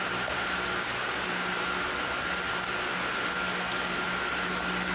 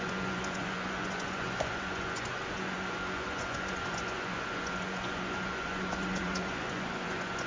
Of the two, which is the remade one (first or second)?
second